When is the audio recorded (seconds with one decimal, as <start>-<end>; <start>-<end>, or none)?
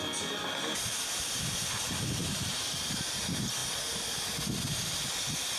0.0-5.6